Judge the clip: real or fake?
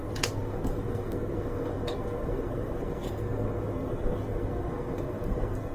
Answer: fake